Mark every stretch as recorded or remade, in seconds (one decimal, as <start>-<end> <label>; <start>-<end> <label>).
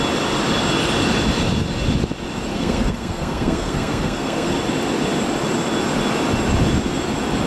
0.0-2.5 recorded; 2.5-4.5 remade; 4.5-7.5 recorded